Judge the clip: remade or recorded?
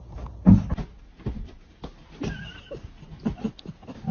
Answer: recorded